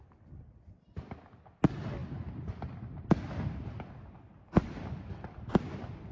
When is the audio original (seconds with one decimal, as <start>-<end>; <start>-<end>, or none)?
0.0-6.1